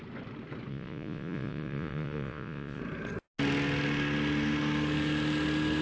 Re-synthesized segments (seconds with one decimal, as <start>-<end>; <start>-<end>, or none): 0.7-2.8